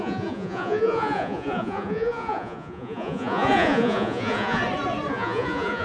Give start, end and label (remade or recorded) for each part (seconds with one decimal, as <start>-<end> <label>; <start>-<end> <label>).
0.0-4.6 remade; 4.6-5.1 recorded; 5.1-5.8 remade